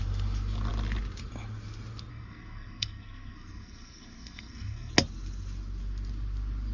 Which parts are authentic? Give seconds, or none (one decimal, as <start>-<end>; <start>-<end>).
0.0-2.1; 4.9-6.7